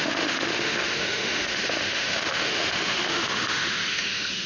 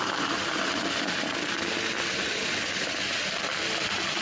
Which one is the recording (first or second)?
second